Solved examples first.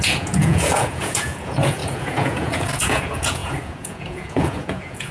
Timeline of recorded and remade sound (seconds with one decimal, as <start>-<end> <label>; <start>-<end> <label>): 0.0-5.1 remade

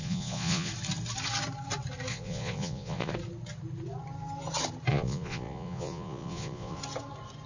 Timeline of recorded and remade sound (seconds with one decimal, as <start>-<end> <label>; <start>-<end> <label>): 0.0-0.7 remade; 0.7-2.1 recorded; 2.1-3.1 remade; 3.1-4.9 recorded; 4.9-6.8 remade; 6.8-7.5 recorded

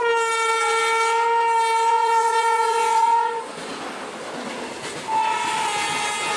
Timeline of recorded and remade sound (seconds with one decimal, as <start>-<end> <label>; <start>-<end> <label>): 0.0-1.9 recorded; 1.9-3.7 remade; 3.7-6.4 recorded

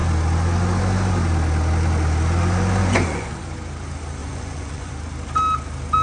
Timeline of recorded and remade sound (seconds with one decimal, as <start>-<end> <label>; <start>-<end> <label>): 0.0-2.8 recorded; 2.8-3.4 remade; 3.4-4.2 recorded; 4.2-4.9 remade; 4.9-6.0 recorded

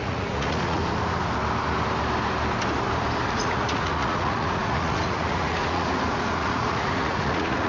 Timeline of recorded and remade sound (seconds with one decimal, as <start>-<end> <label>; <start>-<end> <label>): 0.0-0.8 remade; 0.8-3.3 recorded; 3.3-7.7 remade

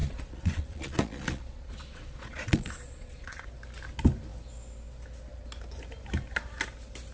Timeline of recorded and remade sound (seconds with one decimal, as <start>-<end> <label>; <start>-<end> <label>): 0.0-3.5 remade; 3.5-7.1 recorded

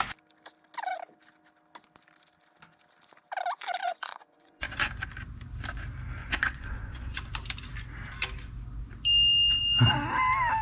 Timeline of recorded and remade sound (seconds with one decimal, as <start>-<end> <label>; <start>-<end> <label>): 0.0-3.8 recorded; 3.8-4.9 remade; 4.9-6.2 recorded; 6.2-7.2 remade; 7.2-10.6 recorded